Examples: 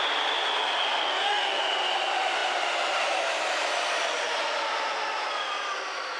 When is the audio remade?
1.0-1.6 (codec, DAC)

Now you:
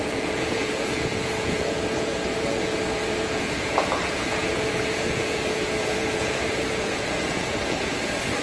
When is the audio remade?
0.0-8.4 (vocoder, Vocos)

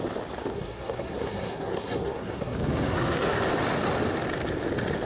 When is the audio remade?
0.4-3.4 (codec, SNAC)

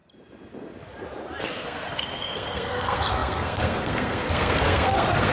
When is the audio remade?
1.4-5.3 (codec, SNAC)